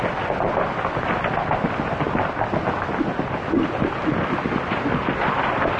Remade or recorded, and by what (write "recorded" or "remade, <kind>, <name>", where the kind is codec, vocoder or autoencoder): recorded